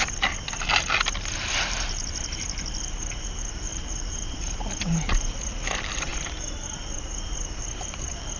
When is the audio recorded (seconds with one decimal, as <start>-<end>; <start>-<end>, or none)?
0.7-1.4